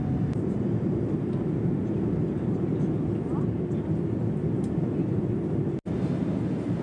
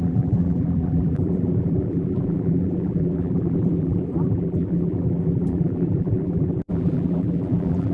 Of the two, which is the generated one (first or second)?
second